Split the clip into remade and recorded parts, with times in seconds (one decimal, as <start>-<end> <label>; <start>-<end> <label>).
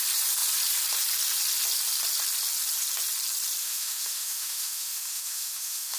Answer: 0.0-3.6 recorded; 3.6-6.0 remade